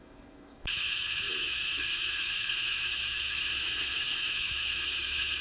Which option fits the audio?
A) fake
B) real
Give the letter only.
A